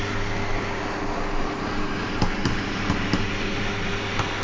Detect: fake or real real